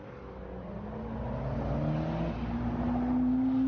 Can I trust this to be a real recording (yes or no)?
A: yes